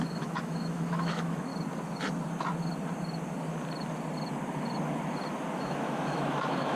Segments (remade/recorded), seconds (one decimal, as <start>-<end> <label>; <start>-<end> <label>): 0.0-1.5 remade; 1.5-5.6 recorded; 5.6-6.8 remade